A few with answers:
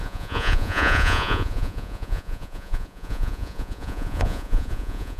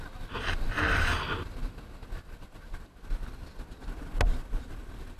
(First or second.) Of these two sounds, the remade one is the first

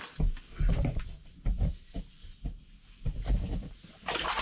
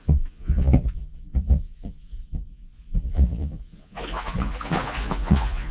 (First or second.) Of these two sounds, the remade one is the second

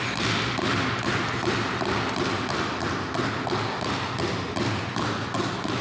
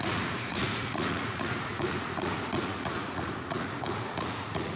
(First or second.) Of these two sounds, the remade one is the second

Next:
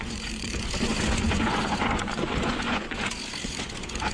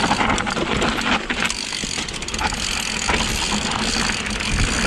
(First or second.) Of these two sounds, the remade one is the first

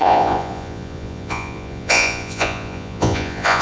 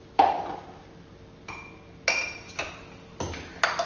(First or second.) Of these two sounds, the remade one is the first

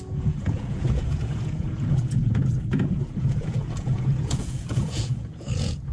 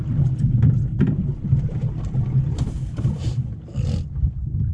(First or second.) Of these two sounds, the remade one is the first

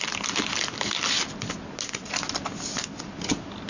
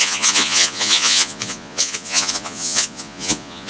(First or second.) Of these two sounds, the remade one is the second